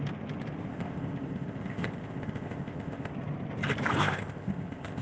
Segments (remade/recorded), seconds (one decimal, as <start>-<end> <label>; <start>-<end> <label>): 0.0-0.7 recorded; 0.7-3.1 remade; 3.1-4.0 recorded; 4.0-5.0 remade